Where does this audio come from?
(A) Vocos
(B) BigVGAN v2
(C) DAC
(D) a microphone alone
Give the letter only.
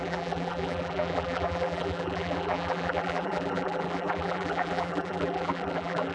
B